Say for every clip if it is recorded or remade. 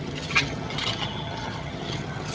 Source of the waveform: remade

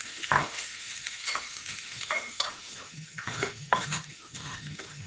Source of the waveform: remade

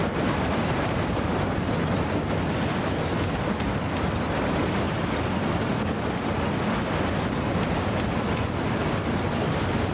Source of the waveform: recorded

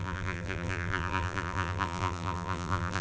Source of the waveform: remade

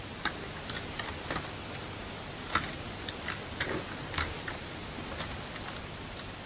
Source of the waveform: recorded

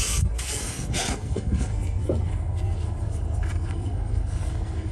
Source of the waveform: remade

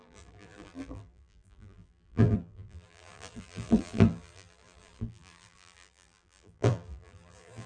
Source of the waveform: remade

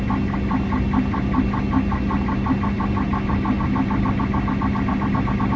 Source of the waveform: recorded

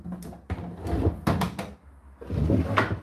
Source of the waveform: recorded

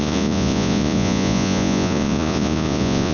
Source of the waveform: remade